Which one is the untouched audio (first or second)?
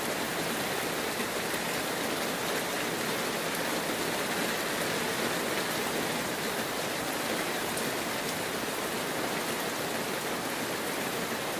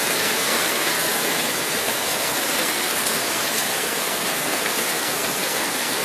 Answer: first